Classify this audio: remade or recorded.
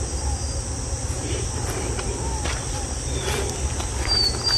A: recorded